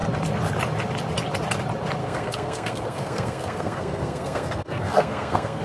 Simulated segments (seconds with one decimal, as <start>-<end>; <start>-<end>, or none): 2.0-5.6